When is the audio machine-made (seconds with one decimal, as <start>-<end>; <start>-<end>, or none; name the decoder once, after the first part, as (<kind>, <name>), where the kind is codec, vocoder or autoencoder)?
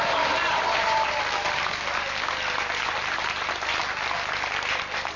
none